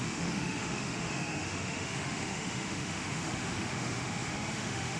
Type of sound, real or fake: fake